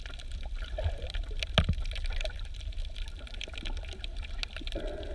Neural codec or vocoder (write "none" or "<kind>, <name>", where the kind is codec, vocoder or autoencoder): none